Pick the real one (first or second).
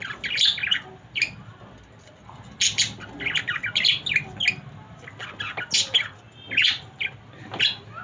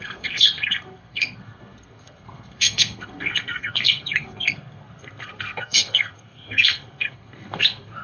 first